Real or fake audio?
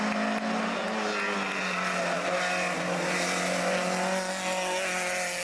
real